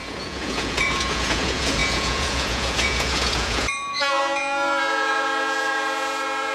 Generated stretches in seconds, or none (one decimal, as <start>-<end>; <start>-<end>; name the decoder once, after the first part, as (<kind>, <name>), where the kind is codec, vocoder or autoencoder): 0.0-6.5 (vocoder, Vocos)

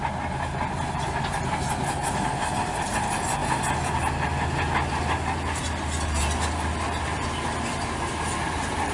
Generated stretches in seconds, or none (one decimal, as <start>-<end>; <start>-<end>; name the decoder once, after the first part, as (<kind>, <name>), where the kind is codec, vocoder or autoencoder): none

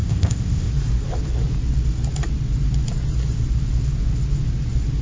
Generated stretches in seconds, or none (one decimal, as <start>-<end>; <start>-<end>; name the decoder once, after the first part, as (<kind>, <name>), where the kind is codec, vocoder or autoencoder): 0.0-0.7 (codec, ZipCodec)

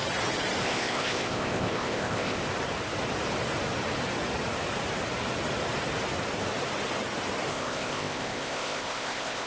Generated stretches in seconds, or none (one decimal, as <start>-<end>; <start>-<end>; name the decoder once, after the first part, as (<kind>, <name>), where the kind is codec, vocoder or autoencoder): 0.6-2.4 (codec, ZipCodec); 7.5-9.5

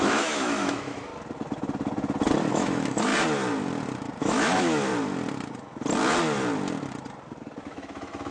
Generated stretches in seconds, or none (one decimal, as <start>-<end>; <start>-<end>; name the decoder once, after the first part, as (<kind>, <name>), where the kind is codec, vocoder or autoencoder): 0.0-1.1 (autoencoder, DAC-VAE); 2.5-3.1; 4.2-4.9; 7.6-8.3